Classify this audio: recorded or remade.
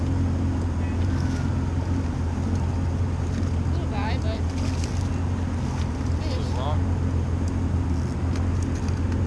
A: recorded